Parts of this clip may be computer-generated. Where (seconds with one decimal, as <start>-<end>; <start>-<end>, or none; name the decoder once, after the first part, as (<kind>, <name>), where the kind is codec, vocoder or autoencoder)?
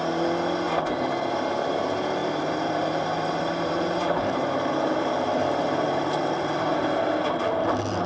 2.2-6.8 (vocoder, BigVGAN v2)